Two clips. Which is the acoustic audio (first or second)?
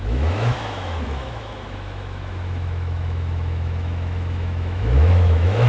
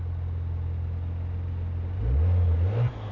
second